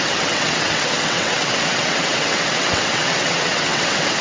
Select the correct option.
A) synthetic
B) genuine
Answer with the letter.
A